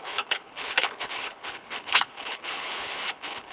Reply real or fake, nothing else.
fake